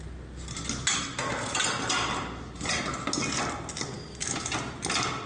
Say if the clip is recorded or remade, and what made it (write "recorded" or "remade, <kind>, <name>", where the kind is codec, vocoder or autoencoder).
recorded